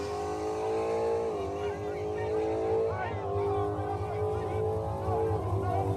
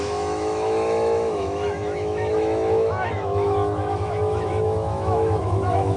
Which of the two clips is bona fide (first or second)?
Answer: first